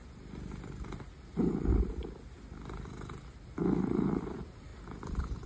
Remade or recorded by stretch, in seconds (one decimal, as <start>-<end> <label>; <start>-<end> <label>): 0.0-5.5 recorded

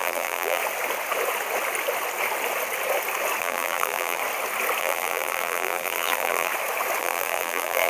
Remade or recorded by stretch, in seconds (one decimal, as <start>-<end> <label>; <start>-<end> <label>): 0.0-0.6 remade; 0.6-3.4 recorded; 3.4-4.2 remade; 4.2-4.8 recorded; 4.8-6.5 remade; 6.5-7.0 recorded; 7.0-7.9 remade